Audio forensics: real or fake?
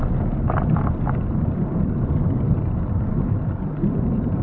fake